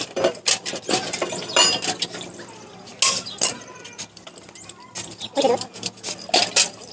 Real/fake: real